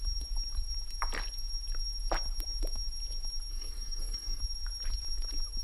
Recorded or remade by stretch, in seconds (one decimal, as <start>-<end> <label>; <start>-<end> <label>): 0.0-3.5 recorded; 3.5-4.4 remade; 4.4-5.6 recorded